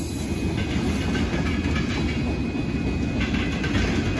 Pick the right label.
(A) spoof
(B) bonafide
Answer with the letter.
B